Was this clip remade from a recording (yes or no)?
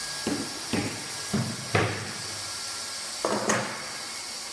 no